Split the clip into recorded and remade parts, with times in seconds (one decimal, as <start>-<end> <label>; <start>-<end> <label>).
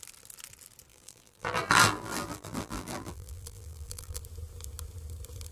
0.0-0.9 recorded; 0.9-4.2 remade; 4.2-5.5 recorded